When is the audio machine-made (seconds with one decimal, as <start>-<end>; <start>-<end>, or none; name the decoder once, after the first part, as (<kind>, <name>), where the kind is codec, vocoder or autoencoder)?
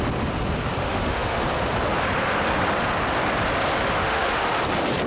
0.8-1.4 (autoencoder, DAC-VAE); 4.0-4.5